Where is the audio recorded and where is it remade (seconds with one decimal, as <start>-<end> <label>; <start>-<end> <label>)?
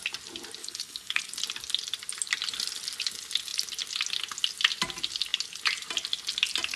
0.0-0.6 recorded; 0.6-1.3 remade; 1.3-6.8 recorded